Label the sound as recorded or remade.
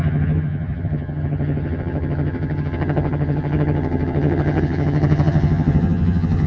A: remade